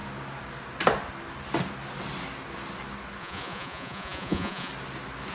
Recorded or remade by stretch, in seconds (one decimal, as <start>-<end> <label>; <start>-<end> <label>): 0.0-3.2 recorded; 3.2-4.7 remade; 4.7-5.3 recorded